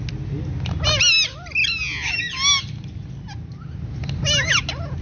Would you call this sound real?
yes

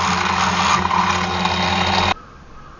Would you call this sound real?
yes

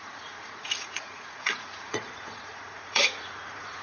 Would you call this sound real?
no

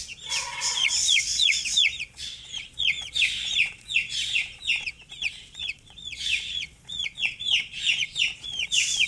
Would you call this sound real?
no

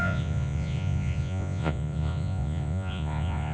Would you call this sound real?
no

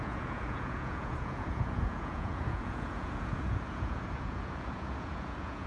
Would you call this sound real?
no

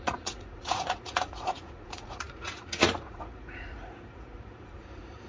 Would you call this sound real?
no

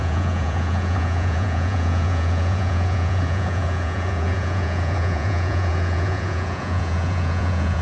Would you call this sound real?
no